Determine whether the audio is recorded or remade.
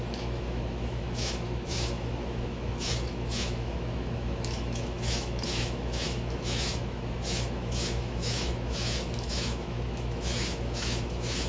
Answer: remade